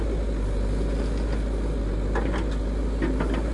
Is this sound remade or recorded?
recorded